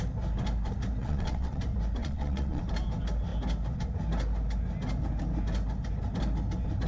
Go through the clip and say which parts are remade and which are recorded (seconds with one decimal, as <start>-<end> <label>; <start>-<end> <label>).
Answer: 0.0-1.0 recorded; 1.0-1.6 remade; 1.6-2.0 recorded; 2.0-2.6 remade; 2.6-6.9 recorded